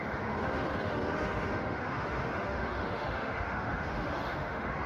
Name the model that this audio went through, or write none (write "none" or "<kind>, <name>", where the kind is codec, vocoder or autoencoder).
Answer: autoencoder, DAC-VAE